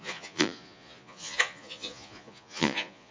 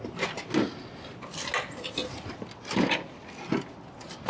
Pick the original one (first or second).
second